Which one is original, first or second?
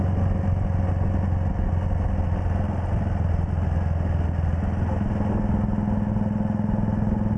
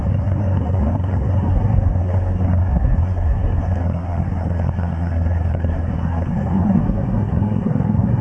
first